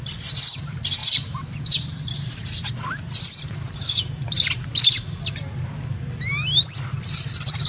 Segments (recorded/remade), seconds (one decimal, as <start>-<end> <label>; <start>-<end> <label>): 0.0-7.7 remade